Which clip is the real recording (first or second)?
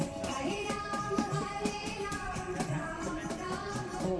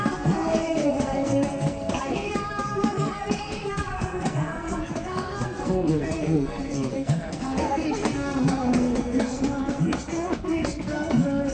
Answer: first